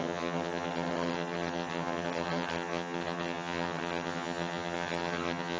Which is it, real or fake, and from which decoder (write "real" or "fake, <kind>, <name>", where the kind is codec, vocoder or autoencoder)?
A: fake, vocoder, HiFi-GAN